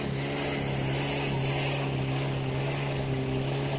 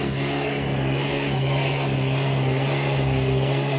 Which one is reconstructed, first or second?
second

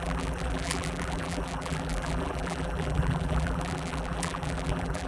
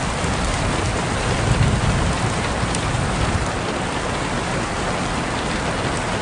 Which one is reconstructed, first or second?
first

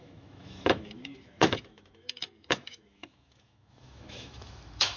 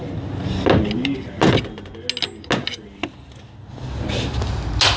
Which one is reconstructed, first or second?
first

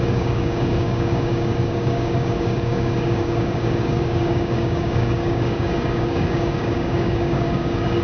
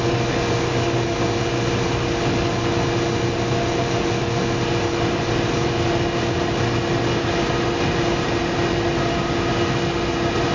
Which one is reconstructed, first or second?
first